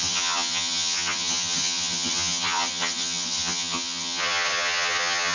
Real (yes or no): no